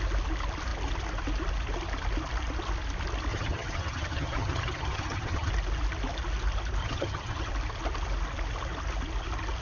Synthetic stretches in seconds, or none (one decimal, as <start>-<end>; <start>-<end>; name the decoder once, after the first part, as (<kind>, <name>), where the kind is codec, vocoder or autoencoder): 3.3-5.5 (vocoder, HiFi-GAN); 6.8-7.5